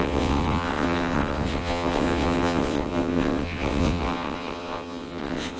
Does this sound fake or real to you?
fake